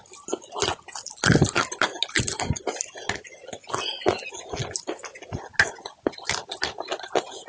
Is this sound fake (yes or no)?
no